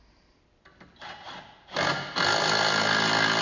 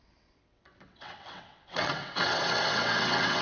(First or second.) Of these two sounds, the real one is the first